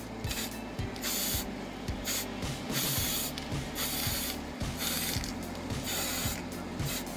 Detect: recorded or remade recorded